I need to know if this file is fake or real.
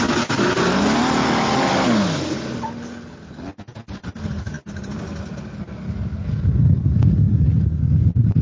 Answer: real